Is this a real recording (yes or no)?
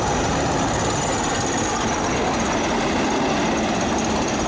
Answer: yes